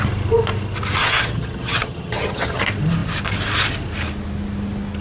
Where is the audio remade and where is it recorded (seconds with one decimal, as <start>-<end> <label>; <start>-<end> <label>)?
0.0-1.0 recorded; 1.0-2.6 remade; 2.6-5.0 recorded